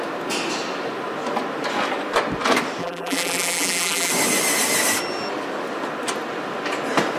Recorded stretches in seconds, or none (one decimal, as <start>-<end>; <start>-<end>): 0.0-2.8; 4.1-7.2